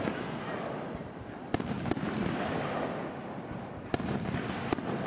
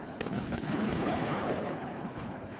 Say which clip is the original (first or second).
first